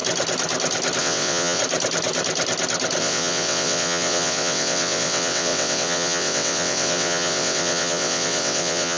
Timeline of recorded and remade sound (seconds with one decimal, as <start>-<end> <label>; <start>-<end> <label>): 0.0-1.0 recorded; 1.0-1.6 remade; 1.6-3.0 recorded; 3.0-9.0 remade